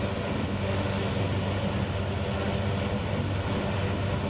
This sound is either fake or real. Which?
real